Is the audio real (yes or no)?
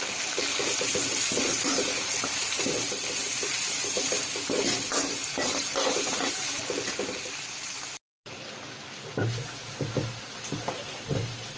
yes